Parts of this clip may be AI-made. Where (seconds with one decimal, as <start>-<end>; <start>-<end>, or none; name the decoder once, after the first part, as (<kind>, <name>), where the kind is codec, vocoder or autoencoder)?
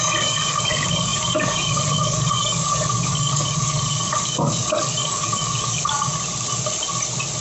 0.0-6.1 (codec, DAC)